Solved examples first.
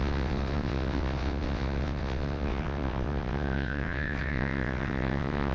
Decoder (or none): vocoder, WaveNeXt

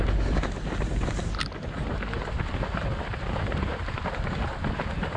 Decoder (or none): none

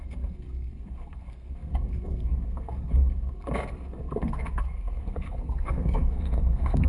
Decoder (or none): codec, SNAC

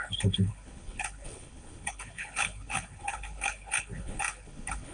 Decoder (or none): codec, HILCodec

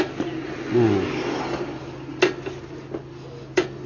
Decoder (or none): none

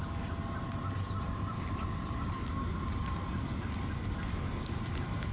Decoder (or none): none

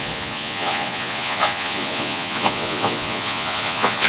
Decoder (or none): vocoder, Vocos